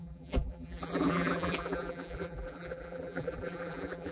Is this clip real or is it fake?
fake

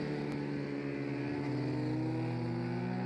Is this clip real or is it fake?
real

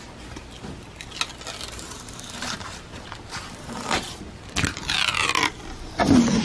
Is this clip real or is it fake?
real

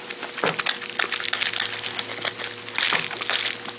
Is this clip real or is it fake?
real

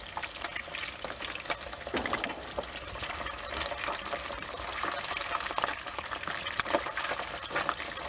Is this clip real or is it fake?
real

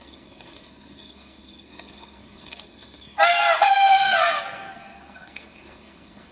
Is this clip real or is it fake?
fake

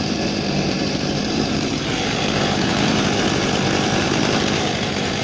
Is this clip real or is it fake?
fake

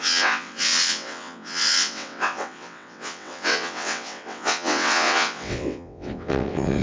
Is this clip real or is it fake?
fake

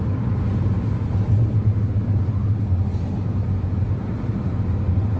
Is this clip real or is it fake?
real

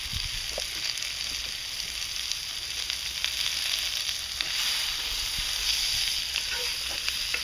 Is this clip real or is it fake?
real